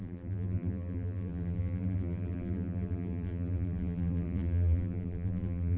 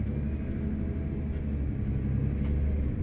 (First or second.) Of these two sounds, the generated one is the first